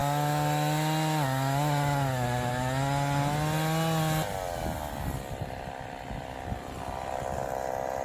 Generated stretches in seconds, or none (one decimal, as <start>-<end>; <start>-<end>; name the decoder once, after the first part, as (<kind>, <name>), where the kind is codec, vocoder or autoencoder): none